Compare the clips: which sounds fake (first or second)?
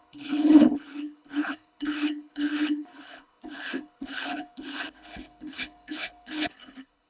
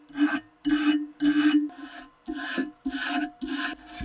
first